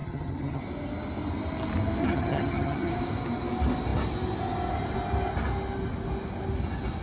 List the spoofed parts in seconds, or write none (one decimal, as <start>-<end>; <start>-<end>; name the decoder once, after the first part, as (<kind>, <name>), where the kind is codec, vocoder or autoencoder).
0.0-0.6 (vocoder, HiFi-GAN); 2.0-2.9